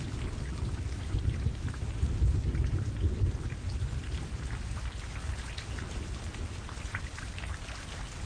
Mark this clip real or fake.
real